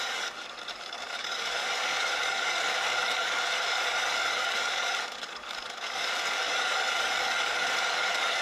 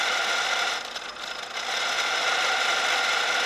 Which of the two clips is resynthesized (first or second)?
first